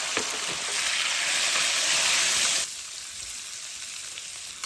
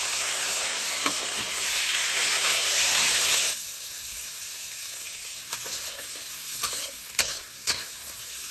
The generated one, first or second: second